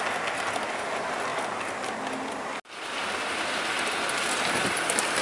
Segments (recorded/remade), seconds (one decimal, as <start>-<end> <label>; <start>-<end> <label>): 0.0-5.2 recorded